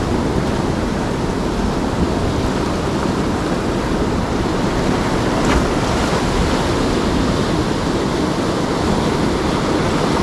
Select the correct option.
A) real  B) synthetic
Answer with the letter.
A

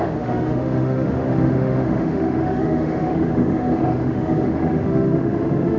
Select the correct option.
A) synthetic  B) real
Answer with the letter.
A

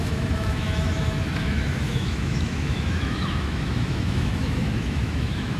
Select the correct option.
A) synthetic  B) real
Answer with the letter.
A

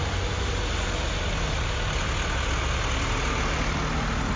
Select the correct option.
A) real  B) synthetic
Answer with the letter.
A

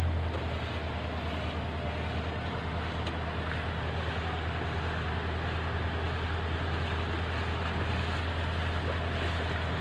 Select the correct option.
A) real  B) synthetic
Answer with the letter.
A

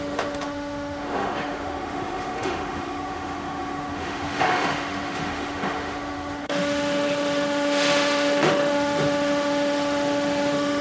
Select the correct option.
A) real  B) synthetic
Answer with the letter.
B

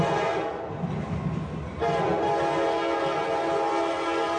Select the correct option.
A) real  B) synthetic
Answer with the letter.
A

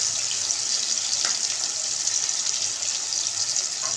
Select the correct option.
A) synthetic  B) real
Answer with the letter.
B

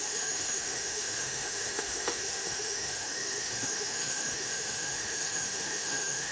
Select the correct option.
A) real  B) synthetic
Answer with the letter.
B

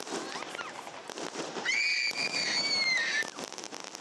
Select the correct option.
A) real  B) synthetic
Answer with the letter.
A